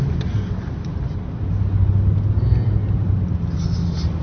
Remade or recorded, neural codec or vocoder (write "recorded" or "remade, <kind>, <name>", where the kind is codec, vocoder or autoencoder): recorded